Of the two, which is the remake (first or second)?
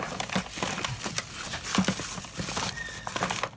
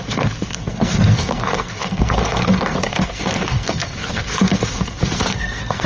second